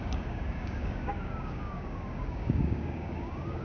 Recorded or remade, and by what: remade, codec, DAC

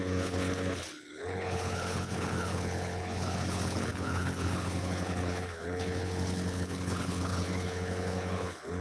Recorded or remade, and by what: remade, codec, HILCodec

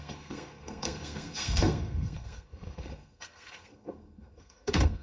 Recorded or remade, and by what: remade, codec, SNAC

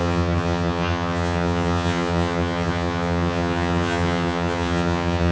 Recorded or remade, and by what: remade, vocoder, HiFi-GAN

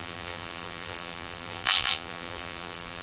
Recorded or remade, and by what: remade, vocoder, BigVGAN v2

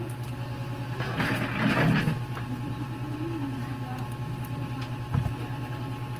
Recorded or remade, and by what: recorded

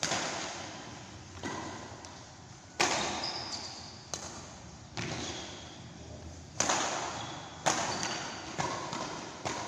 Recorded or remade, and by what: recorded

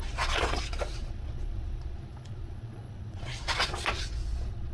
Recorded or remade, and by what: remade, vocoder, Vocos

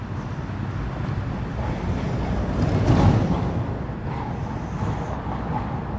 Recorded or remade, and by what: recorded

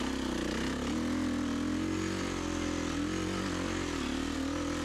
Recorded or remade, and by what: recorded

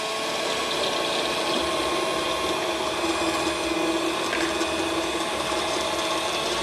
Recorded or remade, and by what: recorded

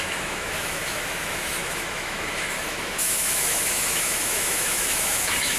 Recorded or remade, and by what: remade, autoencoder, DAC-VAE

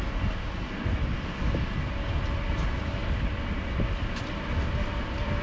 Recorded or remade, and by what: recorded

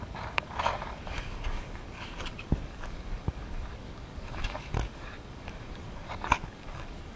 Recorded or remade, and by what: remade, codec, DAC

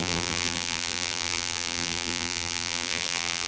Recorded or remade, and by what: remade, vocoder, BigVGAN v2